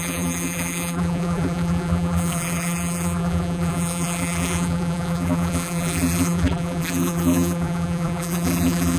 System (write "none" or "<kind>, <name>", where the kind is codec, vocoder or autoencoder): vocoder, BigVGAN v2